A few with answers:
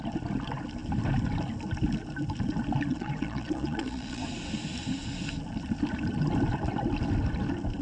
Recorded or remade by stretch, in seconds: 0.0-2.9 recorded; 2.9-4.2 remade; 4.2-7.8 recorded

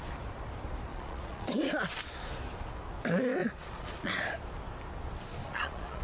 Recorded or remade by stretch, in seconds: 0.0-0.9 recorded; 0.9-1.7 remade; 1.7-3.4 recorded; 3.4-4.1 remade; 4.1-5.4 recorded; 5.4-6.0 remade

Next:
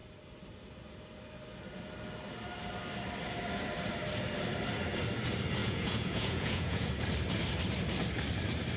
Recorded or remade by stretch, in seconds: 0.0-5.6 recorded; 5.6-6.9 remade; 6.9-8.8 recorded

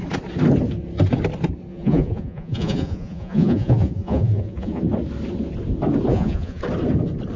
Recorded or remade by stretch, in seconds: 0.0-1.7 recorded; 1.7-4.8 remade; 4.8-6.1 recorded; 6.1-6.6 remade; 6.6-7.4 recorded

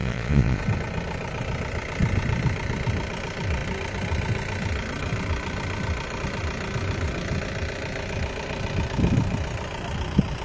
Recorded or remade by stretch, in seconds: 0.0-0.6 remade; 0.6-10.4 recorded

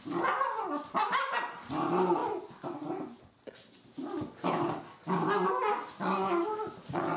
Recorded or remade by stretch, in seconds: 0.0-7.2 recorded